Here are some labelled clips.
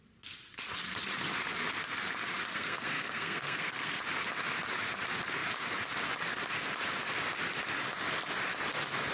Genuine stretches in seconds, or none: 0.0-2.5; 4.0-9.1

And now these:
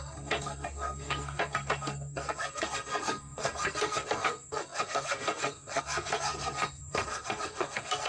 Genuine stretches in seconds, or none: none